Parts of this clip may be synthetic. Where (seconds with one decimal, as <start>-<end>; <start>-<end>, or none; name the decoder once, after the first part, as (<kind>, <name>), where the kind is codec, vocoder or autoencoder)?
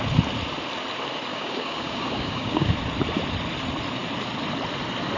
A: 1.3-2.7 (codec, DAC)